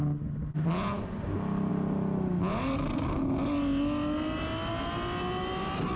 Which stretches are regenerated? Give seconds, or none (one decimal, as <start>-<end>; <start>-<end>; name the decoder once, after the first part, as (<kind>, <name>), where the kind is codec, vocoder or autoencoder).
none